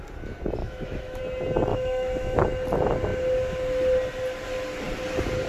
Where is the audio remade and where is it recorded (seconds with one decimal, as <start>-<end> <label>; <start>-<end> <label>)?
0.0-0.6 recorded; 0.6-1.2 remade; 1.2-1.7 recorded; 1.7-2.4 remade; 2.4-5.5 recorded